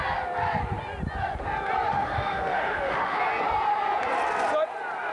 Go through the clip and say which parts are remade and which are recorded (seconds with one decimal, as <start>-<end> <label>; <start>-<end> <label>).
0.0-1.9 recorded; 1.9-3.2 remade; 3.2-5.1 recorded